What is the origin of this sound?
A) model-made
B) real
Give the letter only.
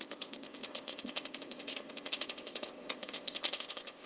A